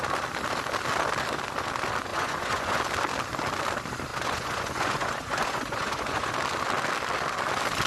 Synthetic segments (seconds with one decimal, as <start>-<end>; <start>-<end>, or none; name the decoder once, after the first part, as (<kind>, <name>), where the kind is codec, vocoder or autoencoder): 2.1-2.8 (vocoder, Vocos); 4.1-6.3